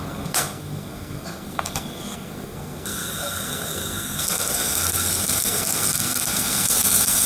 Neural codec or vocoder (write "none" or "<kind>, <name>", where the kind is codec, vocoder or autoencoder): codec, SNAC